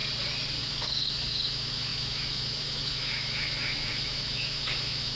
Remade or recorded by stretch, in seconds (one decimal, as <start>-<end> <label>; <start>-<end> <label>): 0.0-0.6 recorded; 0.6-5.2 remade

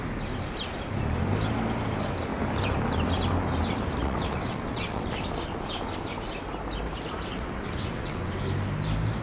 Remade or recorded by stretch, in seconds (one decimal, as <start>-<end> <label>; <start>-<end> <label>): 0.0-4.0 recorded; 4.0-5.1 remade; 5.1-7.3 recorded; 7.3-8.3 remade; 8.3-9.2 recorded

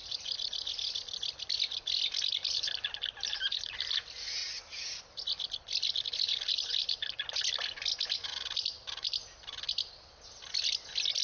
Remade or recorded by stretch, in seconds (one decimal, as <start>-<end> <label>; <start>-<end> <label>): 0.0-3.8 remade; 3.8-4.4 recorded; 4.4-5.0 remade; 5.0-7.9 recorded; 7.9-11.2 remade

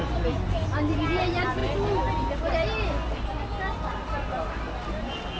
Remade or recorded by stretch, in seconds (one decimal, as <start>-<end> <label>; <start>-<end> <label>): 0.0-4.0 recorded; 4.0-4.7 remade; 4.7-5.4 recorded

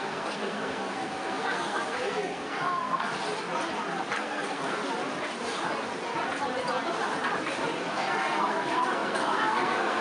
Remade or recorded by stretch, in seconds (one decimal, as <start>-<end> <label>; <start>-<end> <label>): 0.0-3.1 remade; 3.1-4.1 recorded; 4.1-4.8 remade; 4.8-7.9 recorded; 7.9-10.0 remade

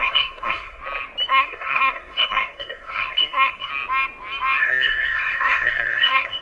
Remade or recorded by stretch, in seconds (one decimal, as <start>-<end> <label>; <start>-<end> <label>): 0.0-0.8 remade; 0.8-1.3 recorded; 1.3-3.7 remade; 3.7-4.6 recorded; 4.6-6.4 remade